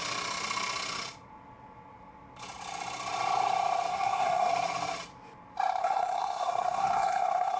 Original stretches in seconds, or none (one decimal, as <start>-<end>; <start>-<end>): 0.0-3.9; 4.5-5.8